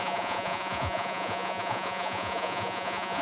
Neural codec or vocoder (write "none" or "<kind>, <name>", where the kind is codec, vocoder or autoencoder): vocoder, Vocos